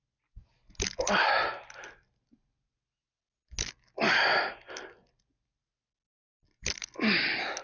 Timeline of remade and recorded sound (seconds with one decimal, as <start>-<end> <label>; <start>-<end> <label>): 0.0-7.6 recorded